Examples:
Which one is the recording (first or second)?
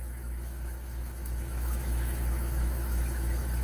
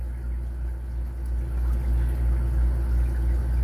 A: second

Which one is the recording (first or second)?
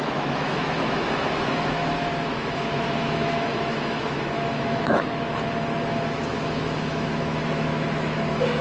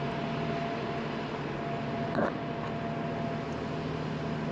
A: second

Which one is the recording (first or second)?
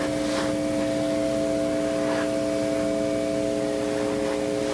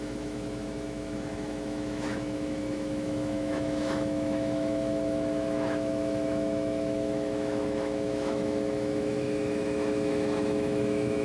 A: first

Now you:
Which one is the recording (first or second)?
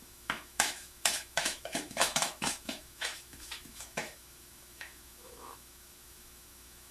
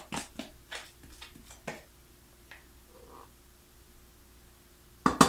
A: second